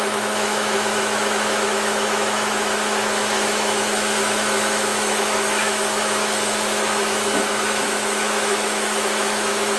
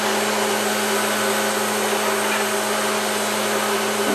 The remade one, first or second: first